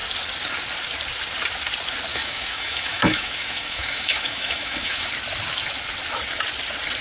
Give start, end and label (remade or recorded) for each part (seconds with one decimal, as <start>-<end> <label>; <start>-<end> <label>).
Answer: 0.0-2.1 recorded; 2.1-5.1 remade; 5.1-7.0 recorded